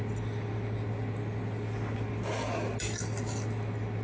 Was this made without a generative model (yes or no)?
yes